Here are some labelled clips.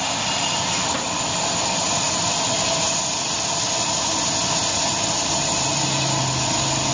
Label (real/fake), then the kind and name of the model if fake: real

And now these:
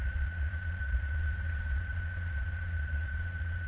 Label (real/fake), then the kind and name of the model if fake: fake, vocoder, Vocos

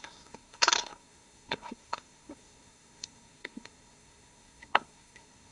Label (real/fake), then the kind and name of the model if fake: fake, codec, SNAC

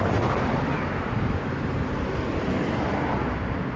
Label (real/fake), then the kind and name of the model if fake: real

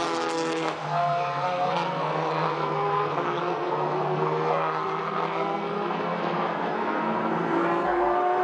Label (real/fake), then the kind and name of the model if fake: fake, codec, SNAC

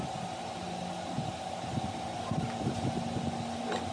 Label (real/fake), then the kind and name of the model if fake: real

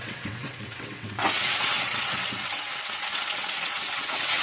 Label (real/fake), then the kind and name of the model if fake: fake, vocoder, WaveNeXt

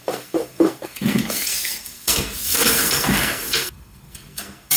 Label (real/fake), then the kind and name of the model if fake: fake, codec, SNAC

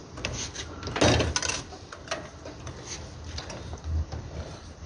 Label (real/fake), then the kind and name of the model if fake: real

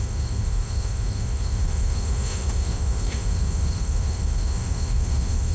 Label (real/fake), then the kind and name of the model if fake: fake, autoencoder, DAC-VAE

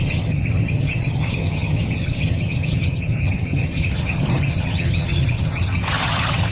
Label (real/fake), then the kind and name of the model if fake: fake, vocoder, HiFi-GAN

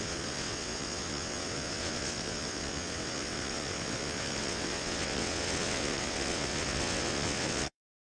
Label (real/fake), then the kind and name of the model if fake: fake, vocoder, WaveNeXt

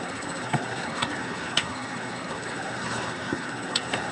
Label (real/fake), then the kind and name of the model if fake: fake, codec, SNAC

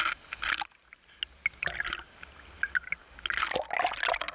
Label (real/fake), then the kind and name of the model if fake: real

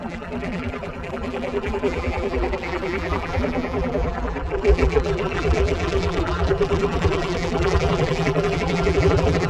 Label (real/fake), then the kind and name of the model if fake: fake, vocoder, BigVGAN v2